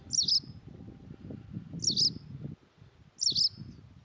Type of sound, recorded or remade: recorded